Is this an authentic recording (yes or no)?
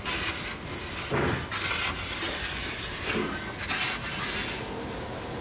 yes